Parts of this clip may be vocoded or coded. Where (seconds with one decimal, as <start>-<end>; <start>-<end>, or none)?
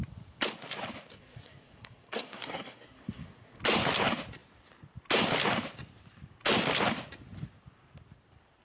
1.1-3.6